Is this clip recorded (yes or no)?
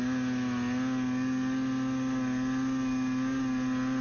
yes